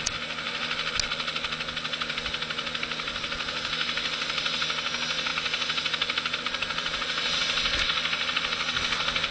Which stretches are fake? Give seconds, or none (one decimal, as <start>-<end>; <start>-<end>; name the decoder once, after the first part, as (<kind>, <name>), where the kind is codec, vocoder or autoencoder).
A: none